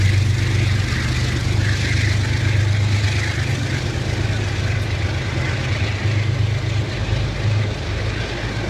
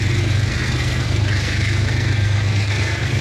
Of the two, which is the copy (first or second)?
second